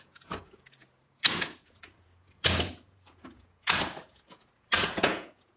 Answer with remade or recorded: remade